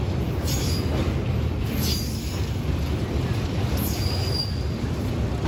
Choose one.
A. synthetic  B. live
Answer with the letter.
B